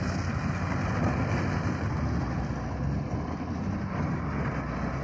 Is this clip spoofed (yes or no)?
no